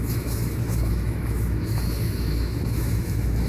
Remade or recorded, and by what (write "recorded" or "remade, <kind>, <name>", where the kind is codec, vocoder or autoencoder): remade, autoencoder, DAC-VAE